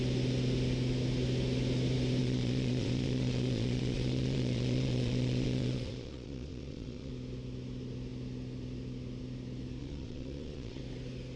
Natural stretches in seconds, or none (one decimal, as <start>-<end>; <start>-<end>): 0.0-2.2; 7.1-9.8; 10.8-11.4